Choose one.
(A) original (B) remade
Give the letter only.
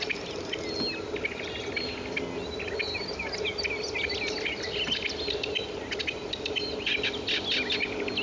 A